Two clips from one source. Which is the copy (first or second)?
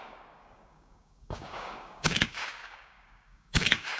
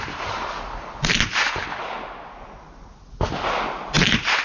first